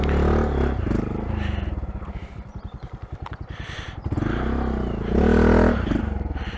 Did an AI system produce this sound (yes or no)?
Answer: no